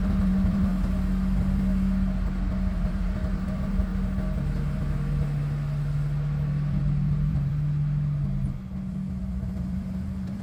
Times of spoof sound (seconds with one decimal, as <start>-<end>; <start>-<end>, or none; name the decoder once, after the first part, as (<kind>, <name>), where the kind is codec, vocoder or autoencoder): 0.0-0.7 (vocoder, BigVGAN v2); 2.7-3.9; 6.8-7.5; 9.2-10.4